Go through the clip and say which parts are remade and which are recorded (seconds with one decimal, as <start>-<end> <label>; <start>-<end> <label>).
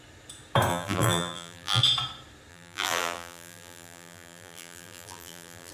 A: 0.0-0.7 recorded; 0.7-1.8 remade; 1.8-2.5 recorded; 2.5-5.7 remade